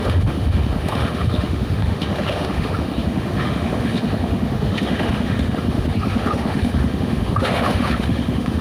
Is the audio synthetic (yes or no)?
yes